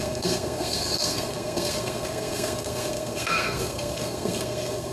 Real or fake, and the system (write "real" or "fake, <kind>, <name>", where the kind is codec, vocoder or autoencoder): fake, codec, SNAC